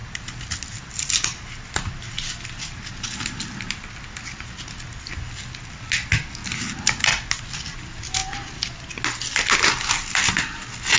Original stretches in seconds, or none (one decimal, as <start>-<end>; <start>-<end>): 0.0-11.0